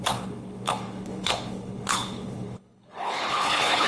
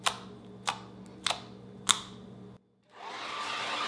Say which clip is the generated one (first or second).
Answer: first